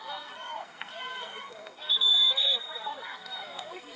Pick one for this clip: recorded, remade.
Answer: remade